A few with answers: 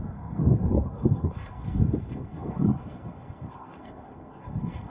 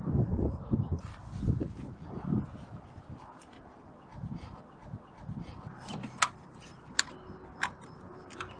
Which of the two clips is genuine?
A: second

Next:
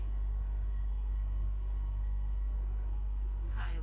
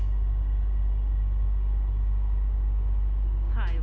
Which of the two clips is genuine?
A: second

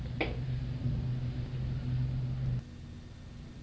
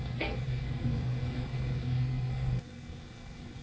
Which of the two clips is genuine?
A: first